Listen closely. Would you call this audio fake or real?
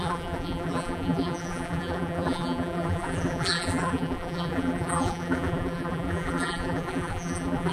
fake